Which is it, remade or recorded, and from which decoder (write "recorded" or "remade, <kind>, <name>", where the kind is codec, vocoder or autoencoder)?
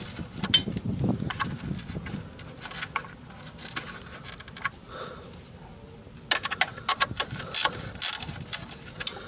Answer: recorded